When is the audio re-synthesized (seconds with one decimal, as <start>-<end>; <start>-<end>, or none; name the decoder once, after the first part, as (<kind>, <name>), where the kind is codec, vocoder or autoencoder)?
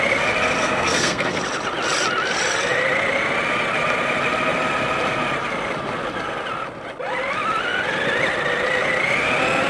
0.6-1.4 (codec, SNAC)